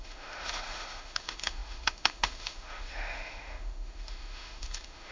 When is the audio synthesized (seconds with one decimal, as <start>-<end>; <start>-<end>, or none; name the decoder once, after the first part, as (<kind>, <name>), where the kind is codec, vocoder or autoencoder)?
0.0-5.1 (autoencoder, DAC-VAE)